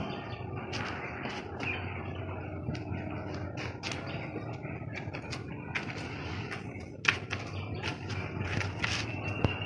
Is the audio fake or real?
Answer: real